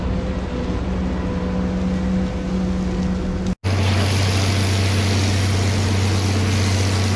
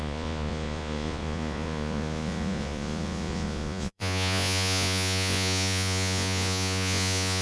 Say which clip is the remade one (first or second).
second